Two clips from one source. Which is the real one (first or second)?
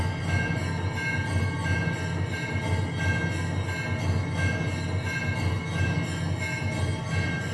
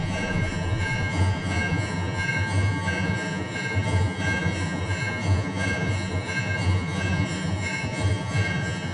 first